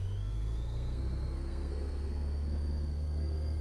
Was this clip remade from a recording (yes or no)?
yes